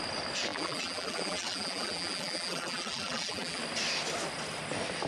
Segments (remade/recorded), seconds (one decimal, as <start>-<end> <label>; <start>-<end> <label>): 0.0-0.5 recorded; 0.5-3.6 remade; 3.6-5.1 recorded